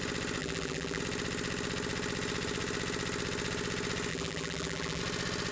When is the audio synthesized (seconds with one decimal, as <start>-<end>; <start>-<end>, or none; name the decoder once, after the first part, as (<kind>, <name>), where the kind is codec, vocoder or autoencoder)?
0.4-1.0 (vocoder, BigVGAN v2); 4.1-5.0